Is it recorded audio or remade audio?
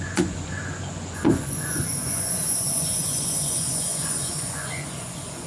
remade